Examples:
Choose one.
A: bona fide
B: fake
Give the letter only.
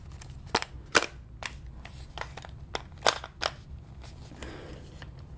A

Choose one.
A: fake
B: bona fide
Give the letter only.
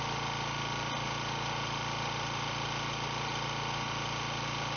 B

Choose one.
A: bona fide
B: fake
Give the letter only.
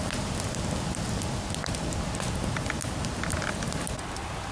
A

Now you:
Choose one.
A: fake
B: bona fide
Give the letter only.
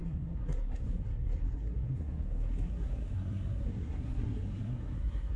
A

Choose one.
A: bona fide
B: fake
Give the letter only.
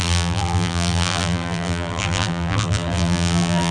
B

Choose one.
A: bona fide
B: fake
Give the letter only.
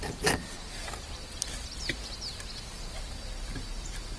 A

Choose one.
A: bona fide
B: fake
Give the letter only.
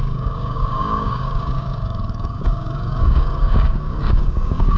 B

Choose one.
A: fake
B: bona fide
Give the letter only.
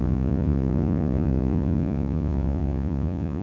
A